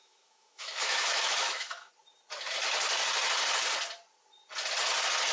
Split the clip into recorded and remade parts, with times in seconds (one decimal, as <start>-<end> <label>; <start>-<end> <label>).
0.0-1.9 remade; 1.9-5.3 recorded

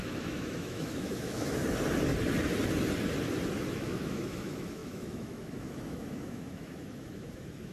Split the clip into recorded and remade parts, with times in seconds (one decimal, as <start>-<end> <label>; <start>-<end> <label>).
0.0-1.6 remade; 1.6-3.7 recorded; 3.7-7.7 remade

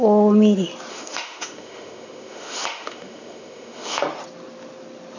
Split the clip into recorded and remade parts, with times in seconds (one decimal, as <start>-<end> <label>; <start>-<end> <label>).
0.0-0.9 recorded; 0.9-4.0 remade; 4.0-5.2 recorded

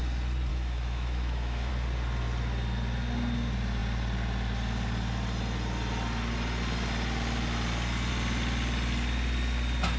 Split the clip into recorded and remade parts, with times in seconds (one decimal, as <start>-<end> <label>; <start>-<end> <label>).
0.0-0.5 recorded; 0.5-1.7 remade; 1.7-10.0 recorded

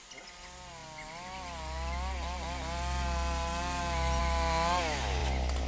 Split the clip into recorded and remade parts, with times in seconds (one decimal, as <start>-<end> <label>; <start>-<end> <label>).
0.0-5.7 recorded